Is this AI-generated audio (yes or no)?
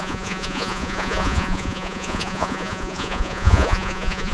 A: yes